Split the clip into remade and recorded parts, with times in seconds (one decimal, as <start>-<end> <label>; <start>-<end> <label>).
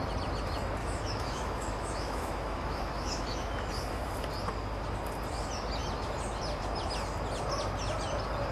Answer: 0.0-0.8 recorded; 0.8-3.7 remade; 3.7-8.5 recorded